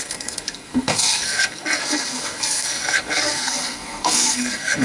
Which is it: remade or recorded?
remade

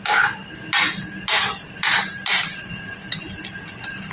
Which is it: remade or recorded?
recorded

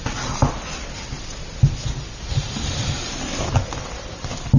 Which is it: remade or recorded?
recorded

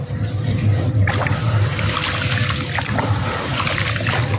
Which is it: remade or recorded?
recorded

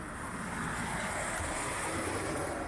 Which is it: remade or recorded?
recorded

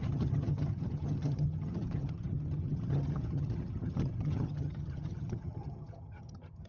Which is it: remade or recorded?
remade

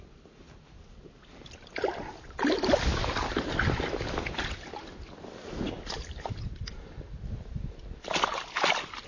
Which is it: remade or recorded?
recorded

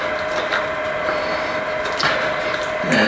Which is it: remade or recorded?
recorded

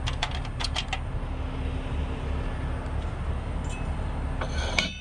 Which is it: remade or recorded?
recorded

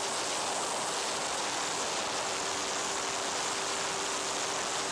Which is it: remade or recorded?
recorded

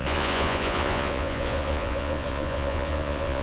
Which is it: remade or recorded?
remade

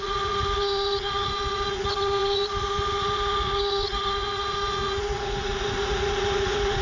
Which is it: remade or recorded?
remade